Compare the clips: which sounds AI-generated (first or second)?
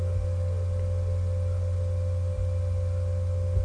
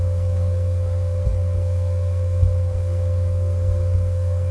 second